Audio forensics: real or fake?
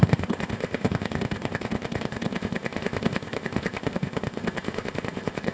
fake